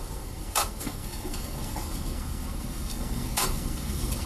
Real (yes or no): no